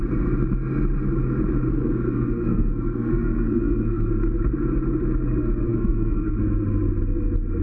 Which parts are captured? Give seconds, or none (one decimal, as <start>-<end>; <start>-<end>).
0.0-1.7; 4.1-5.7; 6.4-7.6